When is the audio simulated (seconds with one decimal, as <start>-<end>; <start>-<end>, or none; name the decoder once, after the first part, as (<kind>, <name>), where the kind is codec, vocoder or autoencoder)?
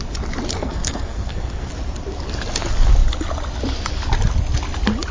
0.5-1.7 (codec, SNAC)